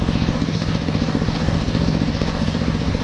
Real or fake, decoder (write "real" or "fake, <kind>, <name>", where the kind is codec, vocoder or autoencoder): fake, codec, DAC